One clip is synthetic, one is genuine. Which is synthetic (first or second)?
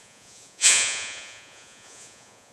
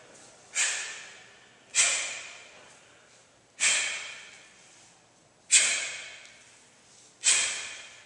first